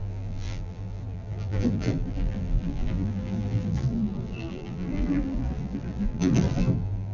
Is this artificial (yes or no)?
yes